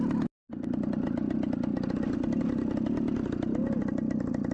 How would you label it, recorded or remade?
recorded